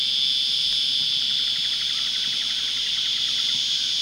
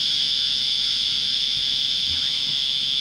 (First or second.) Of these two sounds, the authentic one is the first